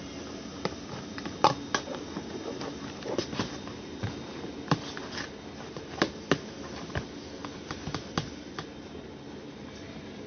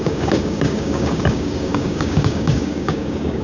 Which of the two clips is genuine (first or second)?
first